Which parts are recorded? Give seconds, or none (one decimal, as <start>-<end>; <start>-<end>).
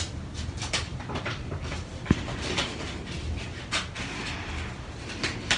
0.0-5.6